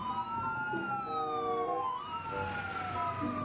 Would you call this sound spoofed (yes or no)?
no